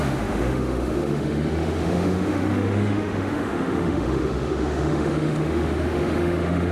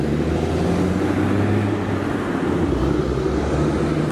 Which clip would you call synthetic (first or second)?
first